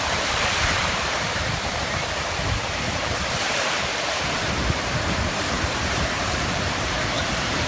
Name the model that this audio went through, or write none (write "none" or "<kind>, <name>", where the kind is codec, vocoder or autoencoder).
vocoder, BigVGAN v2